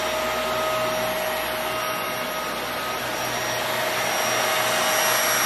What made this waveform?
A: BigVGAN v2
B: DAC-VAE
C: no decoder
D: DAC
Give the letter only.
C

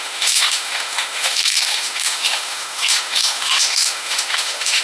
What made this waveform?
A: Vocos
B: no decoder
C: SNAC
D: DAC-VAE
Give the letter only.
D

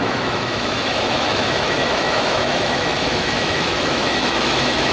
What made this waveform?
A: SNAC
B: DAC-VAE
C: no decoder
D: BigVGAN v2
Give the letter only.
B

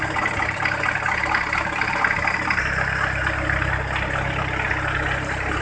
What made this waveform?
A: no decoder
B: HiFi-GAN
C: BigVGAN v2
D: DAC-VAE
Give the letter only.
A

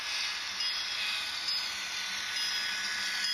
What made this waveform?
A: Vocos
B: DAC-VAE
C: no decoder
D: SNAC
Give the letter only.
C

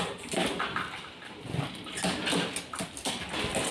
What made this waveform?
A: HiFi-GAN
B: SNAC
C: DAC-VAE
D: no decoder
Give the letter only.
D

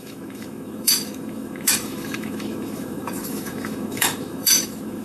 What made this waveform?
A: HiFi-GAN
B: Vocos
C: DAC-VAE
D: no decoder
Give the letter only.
C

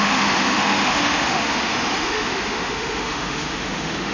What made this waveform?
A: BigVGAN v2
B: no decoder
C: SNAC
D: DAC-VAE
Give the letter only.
D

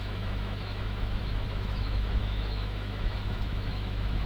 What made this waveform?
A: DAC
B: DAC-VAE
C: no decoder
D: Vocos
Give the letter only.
B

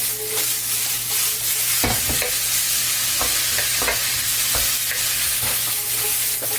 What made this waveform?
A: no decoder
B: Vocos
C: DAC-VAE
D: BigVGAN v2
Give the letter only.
A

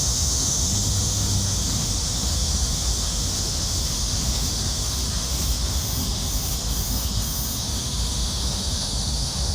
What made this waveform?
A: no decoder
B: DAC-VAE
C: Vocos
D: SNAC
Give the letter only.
B